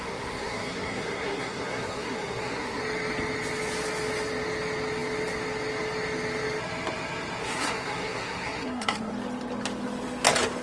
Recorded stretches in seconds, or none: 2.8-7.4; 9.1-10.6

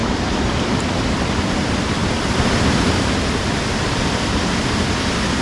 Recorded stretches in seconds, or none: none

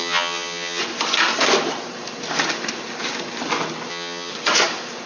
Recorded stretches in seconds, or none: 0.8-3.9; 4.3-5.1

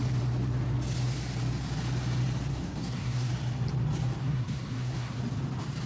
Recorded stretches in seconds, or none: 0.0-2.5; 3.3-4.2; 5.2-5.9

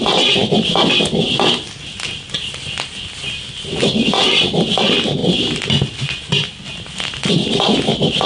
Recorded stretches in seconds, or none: 0.0-8.3

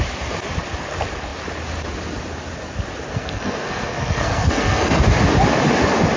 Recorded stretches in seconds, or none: 0.0-3.1; 5.0-6.2

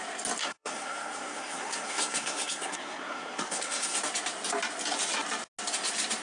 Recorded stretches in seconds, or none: 0.0-0.4; 4.0-6.2

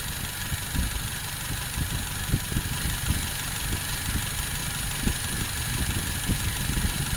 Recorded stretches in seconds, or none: 0.0-7.2